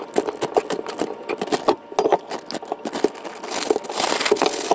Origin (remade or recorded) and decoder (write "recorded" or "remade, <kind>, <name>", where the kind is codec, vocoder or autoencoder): recorded